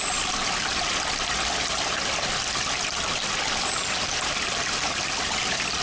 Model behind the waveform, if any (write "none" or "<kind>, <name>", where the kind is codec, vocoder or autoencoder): none